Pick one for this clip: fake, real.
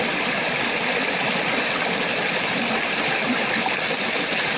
real